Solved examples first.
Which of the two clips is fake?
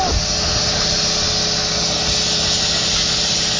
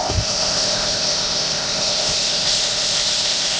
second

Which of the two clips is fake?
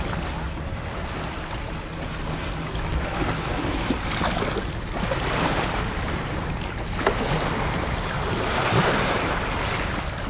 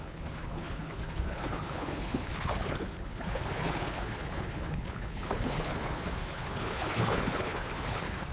second